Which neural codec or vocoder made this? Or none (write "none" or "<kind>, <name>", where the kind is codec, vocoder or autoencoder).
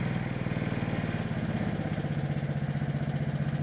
none